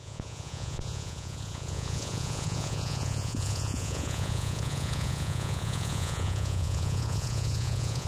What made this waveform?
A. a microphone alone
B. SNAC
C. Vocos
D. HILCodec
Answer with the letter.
C